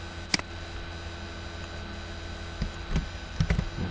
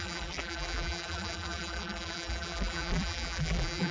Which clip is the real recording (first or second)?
first